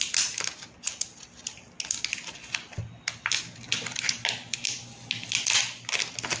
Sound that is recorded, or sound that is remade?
recorded